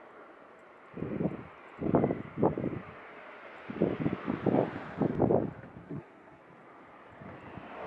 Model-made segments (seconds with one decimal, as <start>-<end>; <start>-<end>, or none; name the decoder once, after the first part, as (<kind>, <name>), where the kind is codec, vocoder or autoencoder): 5.8-6.4 (codec, SNAC)